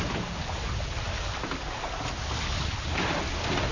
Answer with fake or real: real